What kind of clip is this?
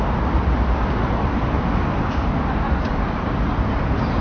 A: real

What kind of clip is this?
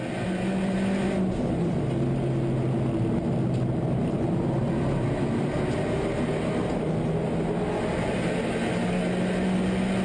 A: real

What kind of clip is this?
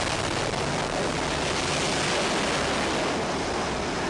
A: real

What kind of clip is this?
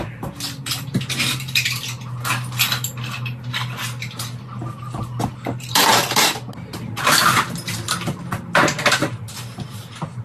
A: real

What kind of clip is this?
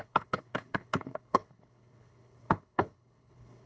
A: fake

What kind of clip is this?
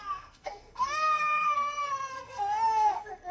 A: fake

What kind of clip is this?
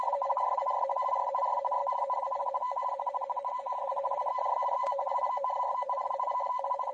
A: fake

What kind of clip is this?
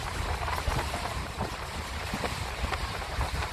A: fake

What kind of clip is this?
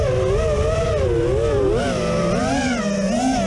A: real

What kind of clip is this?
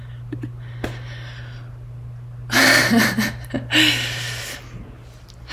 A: real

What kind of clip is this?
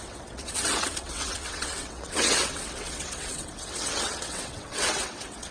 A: fake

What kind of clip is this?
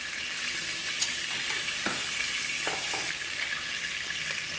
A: real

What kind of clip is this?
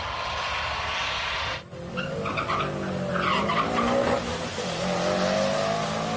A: real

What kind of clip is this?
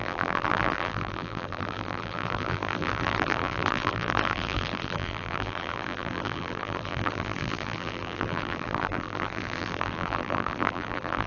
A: fake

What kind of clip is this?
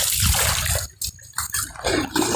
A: real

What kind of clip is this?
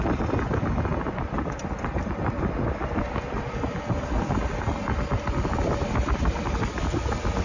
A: real